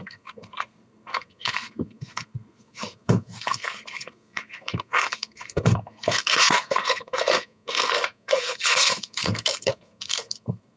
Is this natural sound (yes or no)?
no